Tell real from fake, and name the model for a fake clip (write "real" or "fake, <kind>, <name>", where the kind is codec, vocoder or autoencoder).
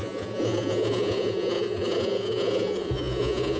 fake, vocoder, Vocos